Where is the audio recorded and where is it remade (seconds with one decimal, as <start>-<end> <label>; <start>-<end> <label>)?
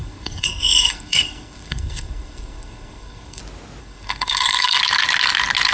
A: 0.0-3.4 remade; 3.4-3.8 recorded; 3.8-4.8 remade; 4.8-5.7 recorded